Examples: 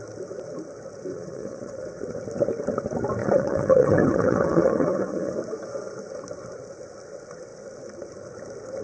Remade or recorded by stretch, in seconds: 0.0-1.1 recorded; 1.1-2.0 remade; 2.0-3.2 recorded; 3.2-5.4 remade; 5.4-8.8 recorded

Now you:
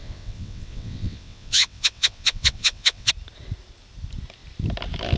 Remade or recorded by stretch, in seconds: 0.0-3.1 remade; 3.1-5.2 recorded

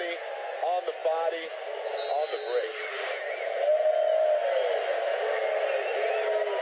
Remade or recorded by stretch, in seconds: 0.0-6.6 recorded

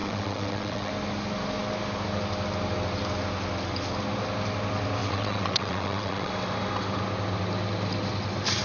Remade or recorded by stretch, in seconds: 0.0-0.9 remade; 0.9-5.0 recorded; 5.0-6.3 remade; 6.3-8.6 recorded